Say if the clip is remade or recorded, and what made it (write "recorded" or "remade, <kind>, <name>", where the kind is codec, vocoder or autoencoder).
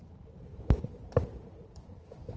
remade, vocoder, BigVGAN v2